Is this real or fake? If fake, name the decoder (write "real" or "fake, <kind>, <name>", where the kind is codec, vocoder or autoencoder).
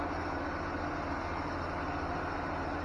real